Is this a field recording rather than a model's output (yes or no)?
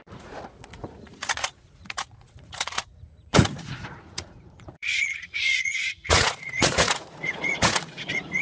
no